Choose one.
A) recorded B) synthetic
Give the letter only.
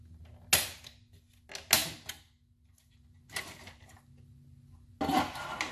A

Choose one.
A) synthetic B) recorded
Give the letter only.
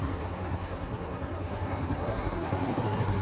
A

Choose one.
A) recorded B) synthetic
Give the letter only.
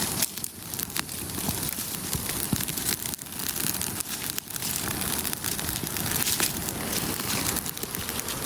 A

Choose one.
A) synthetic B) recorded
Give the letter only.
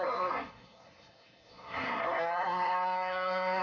A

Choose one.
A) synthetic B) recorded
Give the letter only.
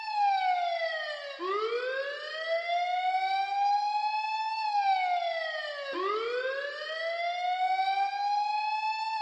B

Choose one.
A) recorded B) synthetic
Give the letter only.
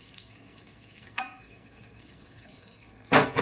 B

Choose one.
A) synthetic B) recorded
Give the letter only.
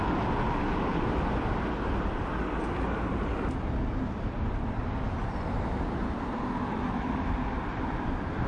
B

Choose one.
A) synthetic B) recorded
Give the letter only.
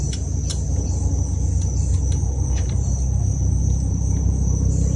B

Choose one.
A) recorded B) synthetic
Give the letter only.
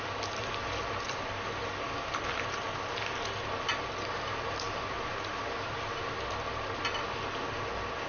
A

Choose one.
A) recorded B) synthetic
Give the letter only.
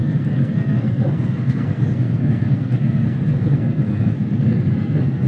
B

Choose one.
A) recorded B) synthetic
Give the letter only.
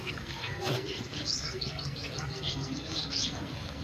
B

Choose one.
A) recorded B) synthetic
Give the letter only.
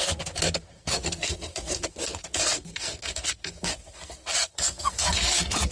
B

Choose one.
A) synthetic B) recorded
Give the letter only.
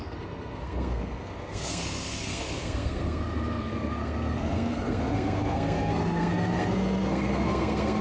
A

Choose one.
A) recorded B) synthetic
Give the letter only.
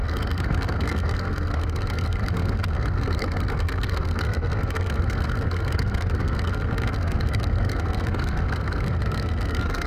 B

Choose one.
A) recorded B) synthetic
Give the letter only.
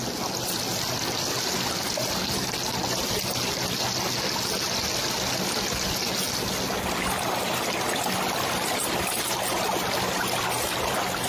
A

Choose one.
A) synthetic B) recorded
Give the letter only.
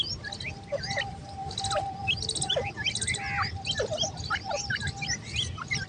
B